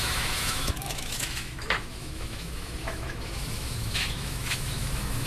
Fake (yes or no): yes